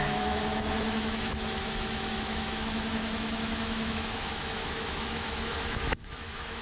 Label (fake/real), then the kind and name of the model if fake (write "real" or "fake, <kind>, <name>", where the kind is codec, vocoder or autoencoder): fake, autoencoder, DAC-VAE